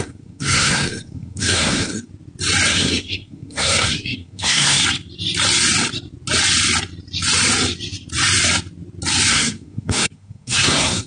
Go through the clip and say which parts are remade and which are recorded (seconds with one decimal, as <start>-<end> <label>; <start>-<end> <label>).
0.0-2.1 remade; 2.1-2.7 recorded; 2.7-4.8 remade; 4.8-9.3 recorded; 9.3-11.1 remade